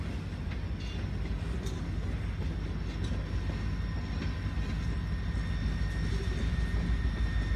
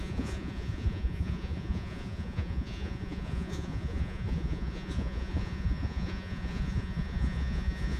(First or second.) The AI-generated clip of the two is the second